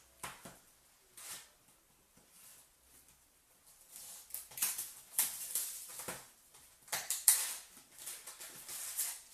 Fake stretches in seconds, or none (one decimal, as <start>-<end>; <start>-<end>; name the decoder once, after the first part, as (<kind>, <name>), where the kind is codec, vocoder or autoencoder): none